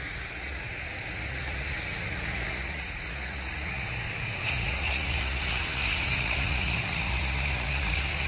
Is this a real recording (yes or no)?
no